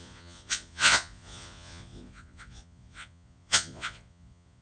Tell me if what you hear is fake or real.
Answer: fake